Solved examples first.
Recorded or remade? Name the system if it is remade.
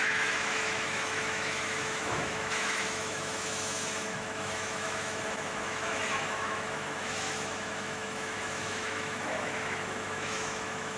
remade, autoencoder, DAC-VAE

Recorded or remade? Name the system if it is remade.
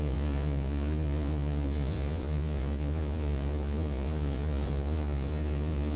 remade, vocoder, Vocos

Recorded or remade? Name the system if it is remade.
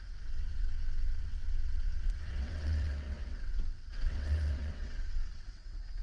remade, vocoder, WaveNeXt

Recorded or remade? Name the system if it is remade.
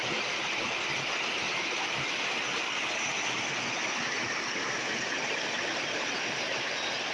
recorded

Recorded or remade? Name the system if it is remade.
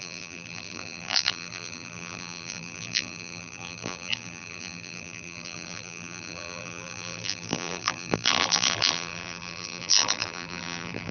remade, vocoder, BigVGAN v2